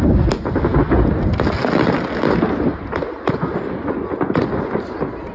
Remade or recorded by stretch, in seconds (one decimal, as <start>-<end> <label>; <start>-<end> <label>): 0.0-5.3 recorded